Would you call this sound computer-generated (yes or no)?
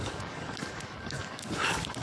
yes